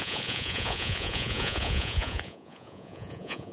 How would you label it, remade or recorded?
remade